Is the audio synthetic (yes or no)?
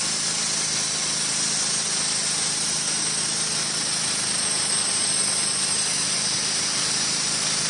no